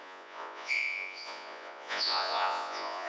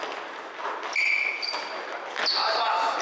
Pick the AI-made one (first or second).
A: first